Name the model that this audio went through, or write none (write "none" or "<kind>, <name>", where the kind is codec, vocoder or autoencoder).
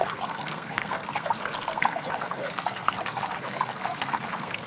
codec, SNAC